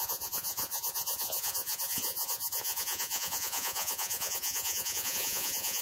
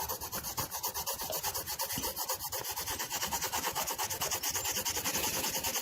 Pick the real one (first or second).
second